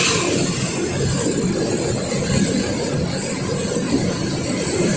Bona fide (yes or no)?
yes